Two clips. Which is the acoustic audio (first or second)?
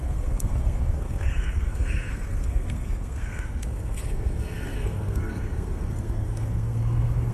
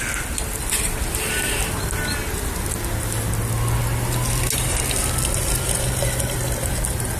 second